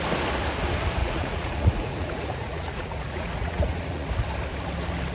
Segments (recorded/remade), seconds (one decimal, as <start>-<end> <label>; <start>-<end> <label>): 0.0-1.0 recorded; 1.0-4.1 remade; 4.1-5.1 recorded